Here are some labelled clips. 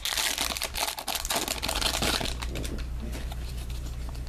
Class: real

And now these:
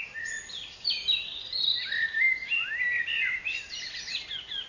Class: real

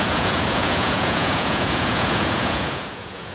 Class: fake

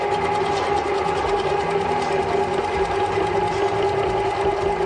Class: real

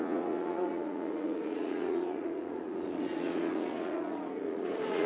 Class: fake